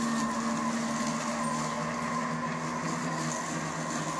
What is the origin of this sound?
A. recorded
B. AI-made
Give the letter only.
A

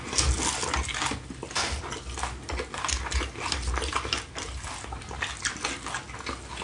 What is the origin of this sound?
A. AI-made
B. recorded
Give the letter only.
B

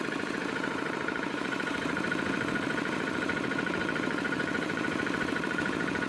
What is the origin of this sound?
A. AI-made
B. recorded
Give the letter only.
A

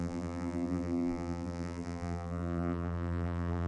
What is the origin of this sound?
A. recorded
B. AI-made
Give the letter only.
B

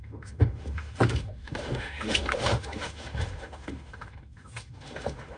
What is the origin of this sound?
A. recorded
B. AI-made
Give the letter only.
B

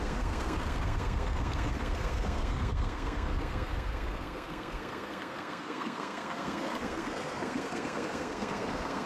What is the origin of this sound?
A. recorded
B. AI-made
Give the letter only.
B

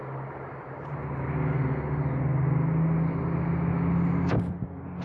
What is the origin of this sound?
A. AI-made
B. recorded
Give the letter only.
B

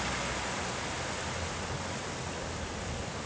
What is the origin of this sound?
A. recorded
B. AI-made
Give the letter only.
A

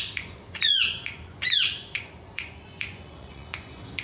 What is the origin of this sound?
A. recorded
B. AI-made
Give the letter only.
B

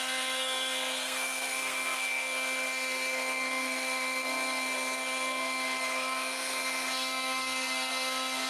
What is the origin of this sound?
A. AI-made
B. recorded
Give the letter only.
A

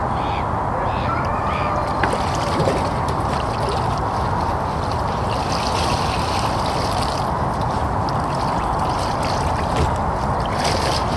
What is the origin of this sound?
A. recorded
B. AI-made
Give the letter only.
A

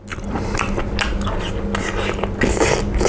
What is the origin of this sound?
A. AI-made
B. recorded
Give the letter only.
B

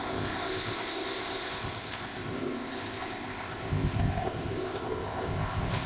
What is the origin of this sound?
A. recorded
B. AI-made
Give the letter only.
B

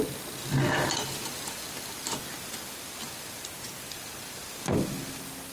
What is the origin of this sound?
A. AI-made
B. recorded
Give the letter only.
B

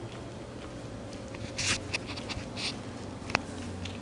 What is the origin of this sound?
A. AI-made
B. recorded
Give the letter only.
B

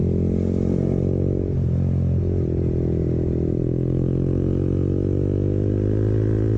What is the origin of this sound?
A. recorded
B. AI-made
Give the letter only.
A